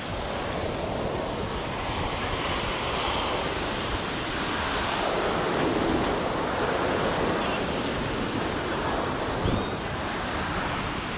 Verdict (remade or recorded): recorded